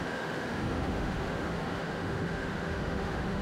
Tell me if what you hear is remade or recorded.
remade